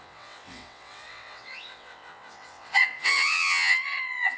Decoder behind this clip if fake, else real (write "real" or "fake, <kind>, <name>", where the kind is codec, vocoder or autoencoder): fake, vocoder, WaveNeXt